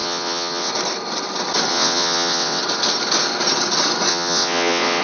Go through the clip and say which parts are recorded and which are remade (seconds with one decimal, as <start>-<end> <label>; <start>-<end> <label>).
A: 0.0-0.7 remade; 0.7-1.7 recorded; 1.7-2.6 remade; 2.6-4.1 recorded; 4.1-5.0 remade